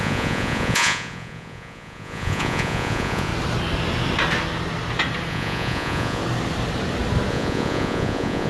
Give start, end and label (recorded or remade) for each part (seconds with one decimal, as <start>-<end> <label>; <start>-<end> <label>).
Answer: 0.0-3.3 remade; 3.3-5.3 recorded; 5.3-6.2 remade; 6.2-7.3 recorded; 7.3-8.5 remade